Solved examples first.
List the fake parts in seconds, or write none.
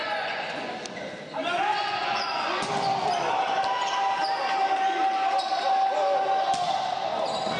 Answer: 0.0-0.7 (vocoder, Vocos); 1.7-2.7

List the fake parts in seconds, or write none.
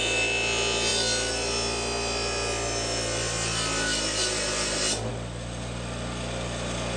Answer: none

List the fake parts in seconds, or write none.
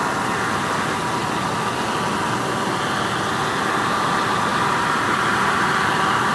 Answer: 4.5-5.7 (vocoder, BigVGAN v2)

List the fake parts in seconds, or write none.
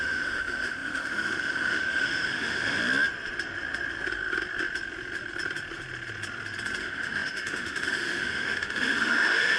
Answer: 0.0-2.8 (autoencoder, DAC-VAE); 6.8-9.6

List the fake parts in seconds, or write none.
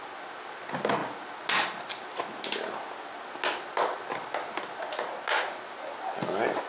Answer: none